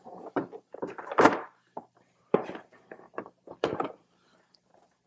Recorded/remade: remade